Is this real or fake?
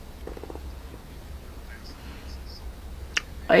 real